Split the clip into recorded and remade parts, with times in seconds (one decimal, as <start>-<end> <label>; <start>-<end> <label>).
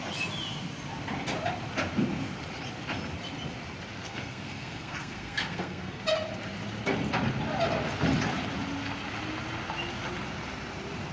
0.0-4.0 recorded; 4.0-6.0 remade; 6.0-11.1 recorded